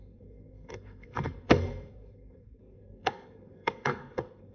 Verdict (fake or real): fake